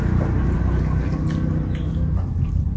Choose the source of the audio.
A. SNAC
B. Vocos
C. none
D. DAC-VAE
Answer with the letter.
C